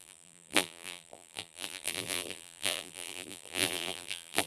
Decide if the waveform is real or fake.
fake